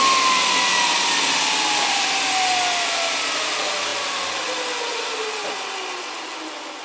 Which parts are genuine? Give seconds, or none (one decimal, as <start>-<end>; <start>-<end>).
0.0-6.8

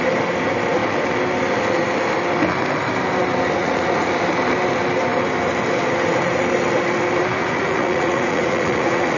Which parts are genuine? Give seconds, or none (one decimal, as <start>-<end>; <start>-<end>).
0.0-3.6; 4.1-7.4

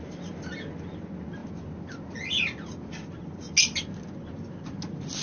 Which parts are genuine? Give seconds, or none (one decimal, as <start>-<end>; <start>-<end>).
0.0-5.2

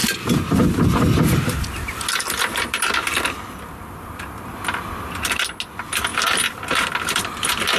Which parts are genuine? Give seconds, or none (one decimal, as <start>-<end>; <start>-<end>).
0.0-7.8

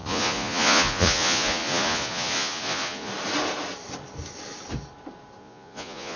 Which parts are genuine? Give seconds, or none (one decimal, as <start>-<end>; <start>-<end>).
3.1-5.4

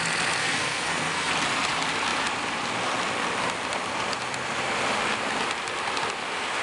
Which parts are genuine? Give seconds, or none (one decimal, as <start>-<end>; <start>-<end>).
0.0-0.4; 1.3-6.6

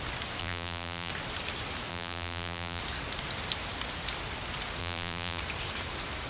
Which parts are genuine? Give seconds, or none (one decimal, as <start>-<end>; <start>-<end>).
0.0-0.4; 1.1-1.9; 2.8-4.8; 5.4-6.3

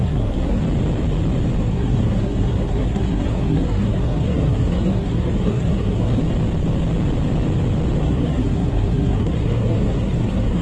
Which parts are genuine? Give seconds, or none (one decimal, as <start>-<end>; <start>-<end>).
0.6-1.6; 6.2-8.0